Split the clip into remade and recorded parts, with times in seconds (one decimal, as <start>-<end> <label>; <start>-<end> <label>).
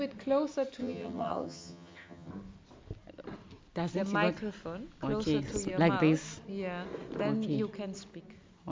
0.0-0.8 recorded; 0.8-2.3 remade; 2.3-8.7 recorded